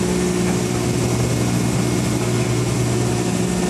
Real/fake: real